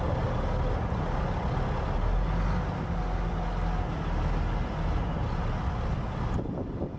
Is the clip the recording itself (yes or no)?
yes